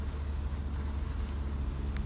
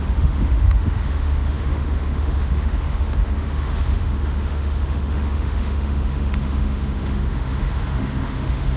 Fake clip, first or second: second